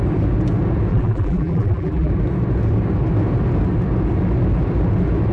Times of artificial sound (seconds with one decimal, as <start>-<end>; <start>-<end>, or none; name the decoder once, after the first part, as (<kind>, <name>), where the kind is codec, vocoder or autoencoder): 0.9-2.1 (vocoder, BigVGAN v2)